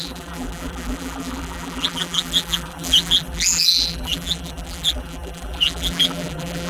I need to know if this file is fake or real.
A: fake